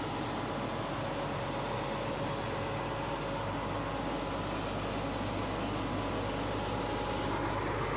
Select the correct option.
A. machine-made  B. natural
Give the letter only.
B